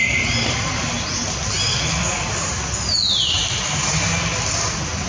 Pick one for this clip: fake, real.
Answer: real